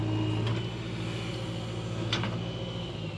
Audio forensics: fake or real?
real